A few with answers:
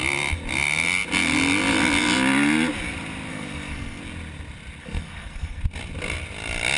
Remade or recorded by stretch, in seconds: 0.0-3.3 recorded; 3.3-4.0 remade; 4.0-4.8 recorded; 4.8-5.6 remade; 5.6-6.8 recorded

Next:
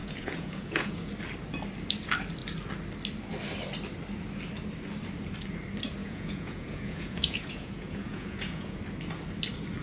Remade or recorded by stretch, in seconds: 0.0-1.1 remade; 1.1-6.0 recorded; 6.0-8.8 remade; 8.8-9.8 recorded

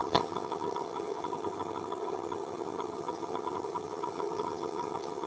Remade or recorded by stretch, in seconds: 0.0-5.3 remade

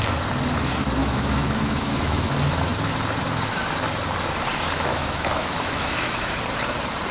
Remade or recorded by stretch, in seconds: 0.0-1.0 recorded; 1.0-2.3 remade; 2.3-4.9 recorded; 4.9-6.3 remade; 6.3-7.1 recorded